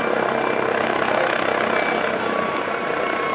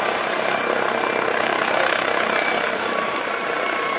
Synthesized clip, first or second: second